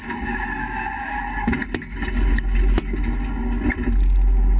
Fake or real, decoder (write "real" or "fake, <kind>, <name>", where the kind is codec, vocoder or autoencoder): real